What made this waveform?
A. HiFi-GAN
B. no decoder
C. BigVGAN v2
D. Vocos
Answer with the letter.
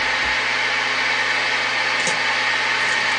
B